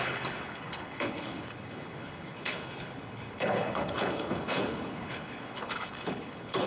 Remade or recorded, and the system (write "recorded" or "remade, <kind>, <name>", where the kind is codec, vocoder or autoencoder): remade, codec, HILCodec